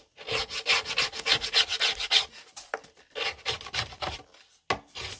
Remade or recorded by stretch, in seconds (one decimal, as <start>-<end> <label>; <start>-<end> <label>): 0.0-5.2 recorded